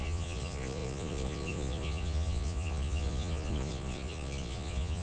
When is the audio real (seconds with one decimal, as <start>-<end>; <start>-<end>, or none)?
none